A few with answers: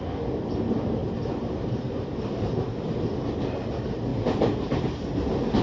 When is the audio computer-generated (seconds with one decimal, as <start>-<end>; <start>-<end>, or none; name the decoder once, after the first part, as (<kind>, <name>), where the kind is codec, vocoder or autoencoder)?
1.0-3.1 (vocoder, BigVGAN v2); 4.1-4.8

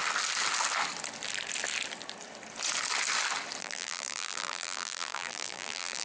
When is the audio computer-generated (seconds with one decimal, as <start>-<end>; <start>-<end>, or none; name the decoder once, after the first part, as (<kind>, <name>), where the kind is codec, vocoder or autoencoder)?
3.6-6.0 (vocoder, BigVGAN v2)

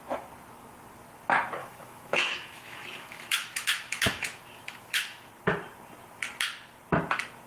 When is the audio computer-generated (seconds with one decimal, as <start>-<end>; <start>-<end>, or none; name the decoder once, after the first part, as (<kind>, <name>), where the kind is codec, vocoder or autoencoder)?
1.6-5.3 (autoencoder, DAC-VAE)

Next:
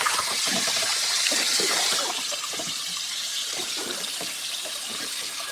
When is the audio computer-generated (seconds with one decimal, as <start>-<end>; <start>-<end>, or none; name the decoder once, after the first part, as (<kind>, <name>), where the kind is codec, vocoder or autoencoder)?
0.0-5.5 (vocoder, BigVGAN v2)

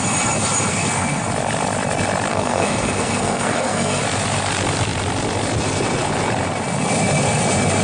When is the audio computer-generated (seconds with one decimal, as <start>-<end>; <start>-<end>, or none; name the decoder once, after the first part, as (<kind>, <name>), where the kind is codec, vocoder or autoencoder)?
0.7-1.2 (codec, SNAC); 2.3-4.0

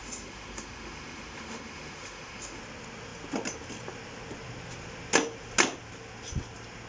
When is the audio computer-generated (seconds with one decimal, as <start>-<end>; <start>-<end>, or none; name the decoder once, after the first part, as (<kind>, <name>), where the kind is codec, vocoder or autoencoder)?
0.0-2.6 (autoencoder, DAC-VAE)